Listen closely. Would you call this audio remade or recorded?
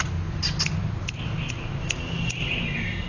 recorded